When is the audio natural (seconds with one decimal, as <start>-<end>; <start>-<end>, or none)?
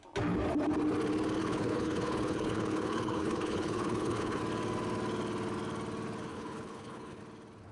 0.0-1.4; 4.4-6.3; 7.2-7.7